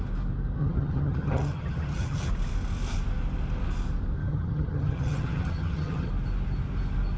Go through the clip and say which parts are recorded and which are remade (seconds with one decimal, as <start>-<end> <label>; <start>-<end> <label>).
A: 0.0-0.6 recorded; 0.6-2.3 remade; 2.3-4.2 recorded; 4.2-6.1 remade; 6.1-7.2 recorded